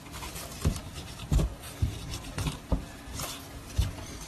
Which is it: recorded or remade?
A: remade